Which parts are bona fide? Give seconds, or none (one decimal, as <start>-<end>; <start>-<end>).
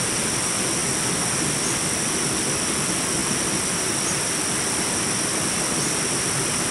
0.0-6.7